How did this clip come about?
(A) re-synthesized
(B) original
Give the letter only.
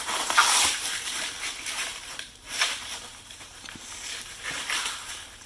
A